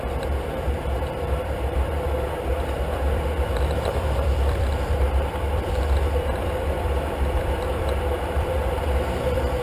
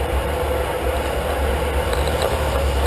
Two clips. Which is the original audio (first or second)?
second